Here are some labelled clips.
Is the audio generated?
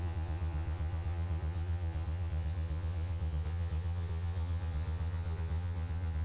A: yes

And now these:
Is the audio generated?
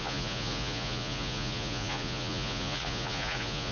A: yes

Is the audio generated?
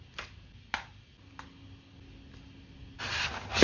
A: no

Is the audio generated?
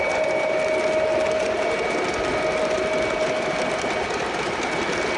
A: no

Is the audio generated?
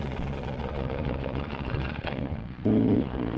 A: yes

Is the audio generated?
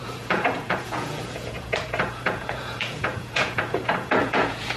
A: yes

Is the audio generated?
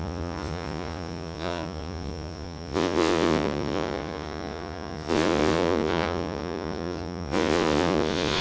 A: yes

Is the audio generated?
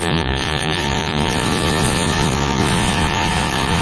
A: yes